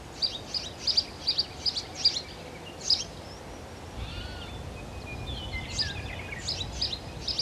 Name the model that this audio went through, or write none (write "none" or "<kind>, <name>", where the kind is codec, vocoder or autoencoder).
none